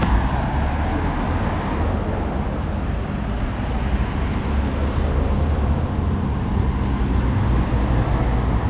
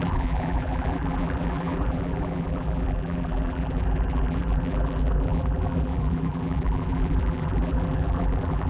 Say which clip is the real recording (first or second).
first